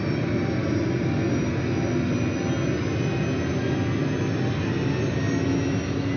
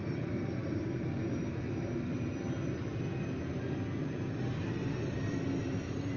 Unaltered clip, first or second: first